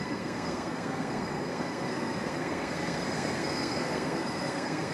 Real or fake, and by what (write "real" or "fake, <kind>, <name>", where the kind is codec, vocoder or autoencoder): fake, codec, SNAC